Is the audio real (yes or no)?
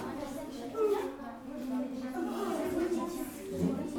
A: yes